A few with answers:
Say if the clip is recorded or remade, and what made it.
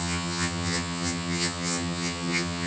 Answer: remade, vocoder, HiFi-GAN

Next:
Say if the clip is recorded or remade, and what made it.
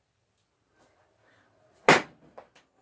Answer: recorded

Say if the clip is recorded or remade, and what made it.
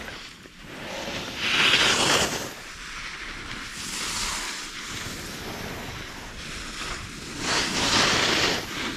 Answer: recorded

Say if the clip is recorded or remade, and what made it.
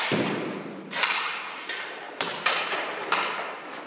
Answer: recorded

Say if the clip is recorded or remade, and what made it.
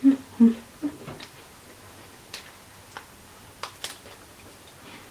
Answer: recorded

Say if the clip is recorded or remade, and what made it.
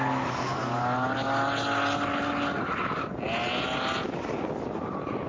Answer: recorded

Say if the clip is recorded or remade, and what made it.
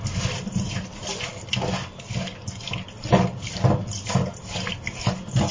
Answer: recorded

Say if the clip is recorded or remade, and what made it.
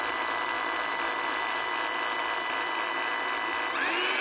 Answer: recorded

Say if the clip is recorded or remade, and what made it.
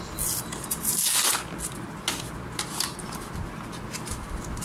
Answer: recorded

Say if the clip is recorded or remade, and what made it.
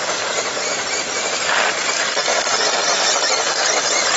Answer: remade, vocoder, BigVGAN v2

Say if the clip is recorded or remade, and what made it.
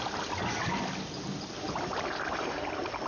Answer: recorded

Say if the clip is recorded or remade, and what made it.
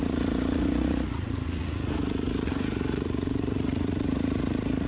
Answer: remade, vocoder, Vocos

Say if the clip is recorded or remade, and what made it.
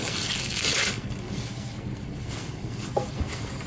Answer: remade, codec, SNAC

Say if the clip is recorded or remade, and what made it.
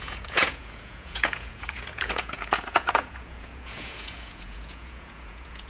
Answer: remade, vocoder, Vocos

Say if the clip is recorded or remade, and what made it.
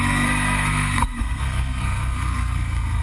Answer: remade, codec, SNAC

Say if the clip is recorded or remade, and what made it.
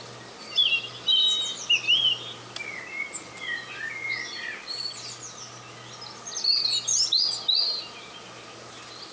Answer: recorded